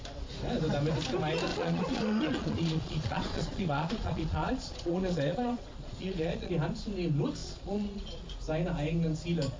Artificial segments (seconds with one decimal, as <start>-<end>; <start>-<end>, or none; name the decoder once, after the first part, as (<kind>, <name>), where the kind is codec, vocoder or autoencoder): 1.5-6.5 (vocoder, Vocos); 7.4-8.2